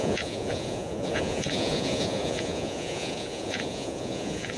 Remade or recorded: remade